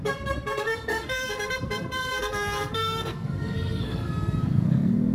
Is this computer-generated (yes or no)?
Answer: yes